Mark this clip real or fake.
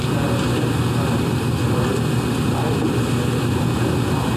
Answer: real